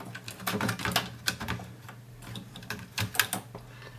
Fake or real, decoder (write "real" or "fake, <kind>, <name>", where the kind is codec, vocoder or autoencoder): real